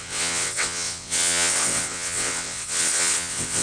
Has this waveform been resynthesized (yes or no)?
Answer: yes